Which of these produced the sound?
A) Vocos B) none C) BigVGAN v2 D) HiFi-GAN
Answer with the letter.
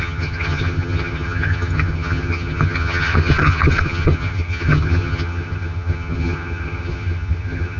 D